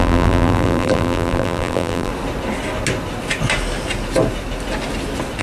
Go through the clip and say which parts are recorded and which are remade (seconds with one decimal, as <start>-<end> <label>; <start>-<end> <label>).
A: 0.0-2.1 remade; 2.1-5.4 recorded